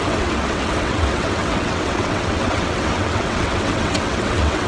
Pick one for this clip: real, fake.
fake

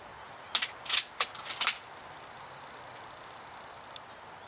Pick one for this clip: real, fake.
real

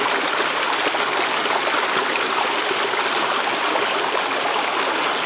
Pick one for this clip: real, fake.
real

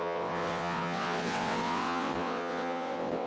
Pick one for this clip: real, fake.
fake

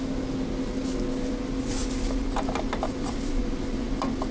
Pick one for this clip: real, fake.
real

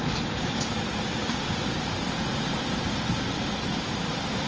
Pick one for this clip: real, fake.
real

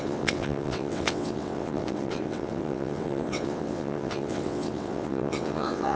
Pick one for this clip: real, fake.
fake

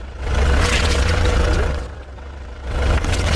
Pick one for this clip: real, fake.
fake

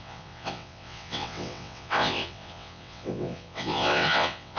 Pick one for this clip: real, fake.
fake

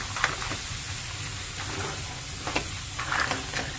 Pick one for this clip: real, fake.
real